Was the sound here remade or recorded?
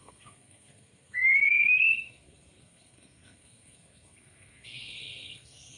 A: remade